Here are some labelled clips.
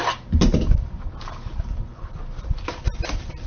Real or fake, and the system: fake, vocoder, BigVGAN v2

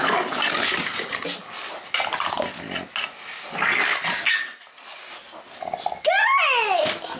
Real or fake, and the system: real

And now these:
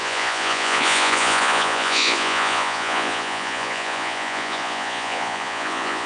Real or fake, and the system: fake, vocoder, Vocos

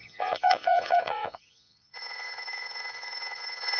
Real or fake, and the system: fake, vocoder, Vocos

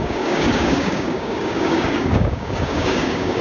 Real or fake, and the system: fake, codec, DAC